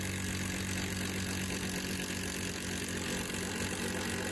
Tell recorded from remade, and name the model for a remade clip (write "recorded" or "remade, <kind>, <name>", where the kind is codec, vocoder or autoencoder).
recorded